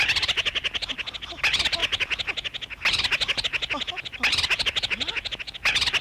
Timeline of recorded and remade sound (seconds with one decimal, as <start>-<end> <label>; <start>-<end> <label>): 0.0-6.0 recorded